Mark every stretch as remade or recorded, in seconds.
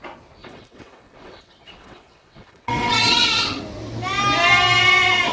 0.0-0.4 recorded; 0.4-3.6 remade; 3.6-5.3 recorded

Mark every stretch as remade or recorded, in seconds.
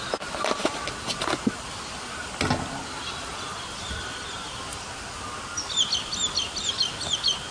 0.0-7.5 recorded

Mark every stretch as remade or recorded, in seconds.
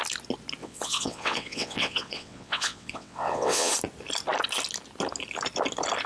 0.0-0.6 recorded; 0.6-3.7 remade; 3.7-6.1 recorded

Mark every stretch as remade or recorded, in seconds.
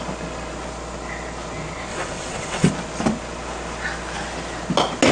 0.0-1.9 recorded; 1.9-2.7 remade; 2.7-5.1 recorded